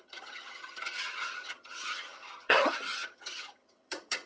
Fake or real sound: fake